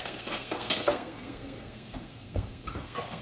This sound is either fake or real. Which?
fake